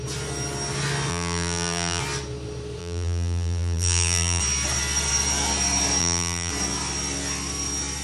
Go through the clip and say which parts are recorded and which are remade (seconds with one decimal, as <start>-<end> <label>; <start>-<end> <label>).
0.0-1.1 recorded; 1.1-2.0 remade; 2.0-2.8 recorded; 2.8-4.4 remade; 4.4-6.0 recorded; 6.0-6.5 remade; 6.5-8.0 recorded